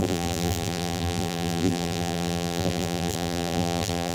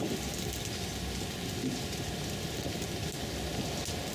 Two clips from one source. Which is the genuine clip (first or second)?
second